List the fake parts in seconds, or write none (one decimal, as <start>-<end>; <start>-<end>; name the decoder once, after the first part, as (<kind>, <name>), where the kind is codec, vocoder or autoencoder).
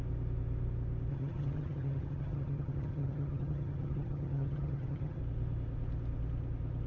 1.1-5.2 (vocoder, HiFi-GAN)